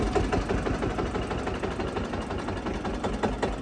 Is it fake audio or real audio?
real